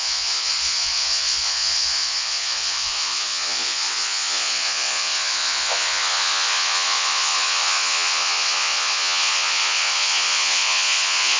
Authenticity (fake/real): fake